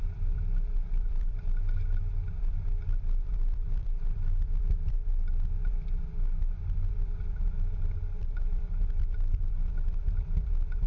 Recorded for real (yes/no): no